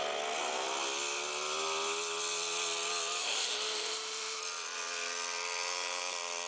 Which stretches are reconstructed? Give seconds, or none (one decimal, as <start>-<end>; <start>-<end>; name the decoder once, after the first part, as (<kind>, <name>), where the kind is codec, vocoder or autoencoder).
3.2-4.4 (autoencoder, DAC-VAE)